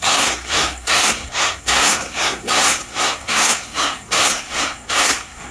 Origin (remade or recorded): remade